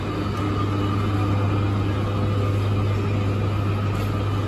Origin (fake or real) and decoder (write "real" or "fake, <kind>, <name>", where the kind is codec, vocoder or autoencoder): real